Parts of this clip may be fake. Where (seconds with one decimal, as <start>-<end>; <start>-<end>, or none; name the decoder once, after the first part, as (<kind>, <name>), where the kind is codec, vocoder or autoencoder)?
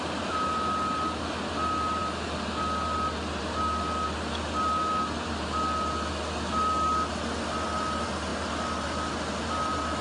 none